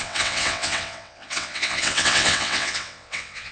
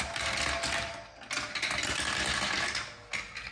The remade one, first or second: first